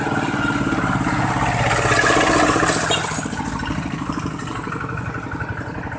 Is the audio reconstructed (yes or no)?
no